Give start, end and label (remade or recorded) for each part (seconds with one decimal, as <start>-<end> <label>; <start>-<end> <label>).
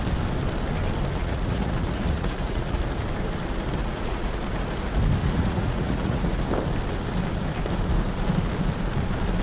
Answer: 0.0-1.2 recorded; 1.2-2.8 remade; 2.8-3.8 recorded; 3.8-4.4 remade; 4.4-5.2 recorded; 5.2-6.4 remade; 6.4-9.4 recorded